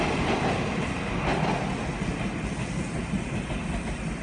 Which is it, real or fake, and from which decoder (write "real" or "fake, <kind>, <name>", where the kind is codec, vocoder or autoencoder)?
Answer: real